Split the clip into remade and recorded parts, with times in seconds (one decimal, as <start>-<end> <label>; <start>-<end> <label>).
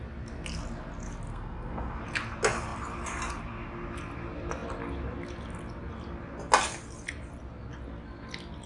0.0-1.3 recorded; 1.3-2.0 remade; 2.0-8.7 recorded